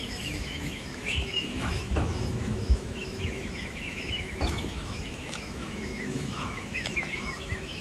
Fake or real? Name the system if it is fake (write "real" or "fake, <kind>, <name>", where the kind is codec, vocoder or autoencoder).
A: fake, autoencoder, DAC-VAE